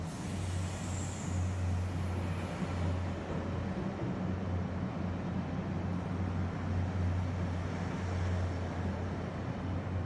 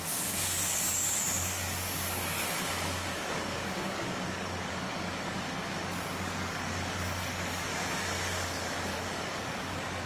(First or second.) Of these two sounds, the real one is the first